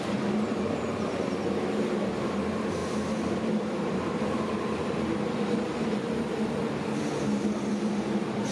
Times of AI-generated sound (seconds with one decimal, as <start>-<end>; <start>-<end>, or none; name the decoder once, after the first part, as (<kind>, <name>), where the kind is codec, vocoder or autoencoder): 0.0-2.8 (vocoder, BigVGAN v2); 3.4-8.5